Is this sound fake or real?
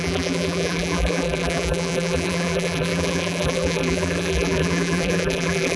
fake